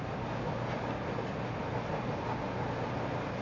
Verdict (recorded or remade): recorded